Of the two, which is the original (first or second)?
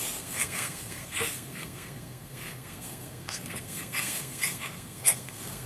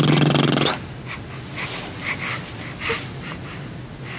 second